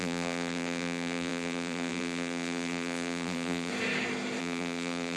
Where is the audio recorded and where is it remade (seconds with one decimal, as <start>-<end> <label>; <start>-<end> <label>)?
0.0-3.7 remade; 3.7-4.4 recorded; 4.4-5.2 remade